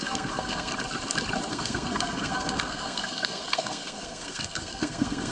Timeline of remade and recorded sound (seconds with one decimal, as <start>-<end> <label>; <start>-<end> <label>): 0.0-0.7 remade; 0.7-1.5 recorded; 1.5-5.3 remade